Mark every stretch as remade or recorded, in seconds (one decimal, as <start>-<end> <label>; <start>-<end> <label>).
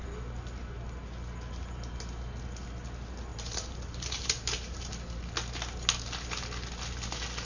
0.0-3.3 recorded; 3.3-4.9 remade; 4.9-7.5 recorded